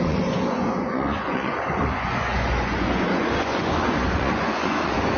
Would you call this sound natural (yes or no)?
no